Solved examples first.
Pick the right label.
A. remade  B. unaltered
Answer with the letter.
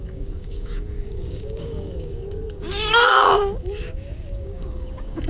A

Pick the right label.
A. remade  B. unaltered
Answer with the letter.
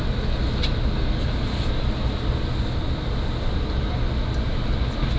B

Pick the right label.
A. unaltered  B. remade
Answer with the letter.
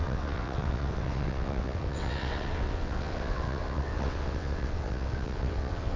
B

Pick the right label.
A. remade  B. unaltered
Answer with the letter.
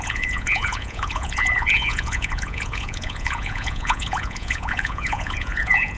A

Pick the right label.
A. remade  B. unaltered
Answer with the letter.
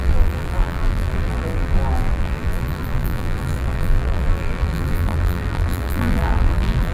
A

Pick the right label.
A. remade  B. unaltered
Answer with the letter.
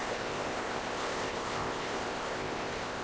A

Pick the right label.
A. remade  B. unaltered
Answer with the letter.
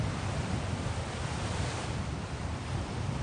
B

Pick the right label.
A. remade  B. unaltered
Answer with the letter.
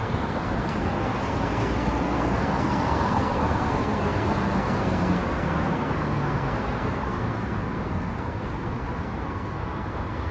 A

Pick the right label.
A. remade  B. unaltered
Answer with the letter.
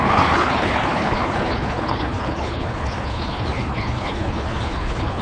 A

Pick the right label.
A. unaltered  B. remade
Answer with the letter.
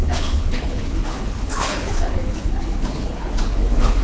B